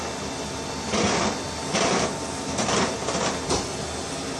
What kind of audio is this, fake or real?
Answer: real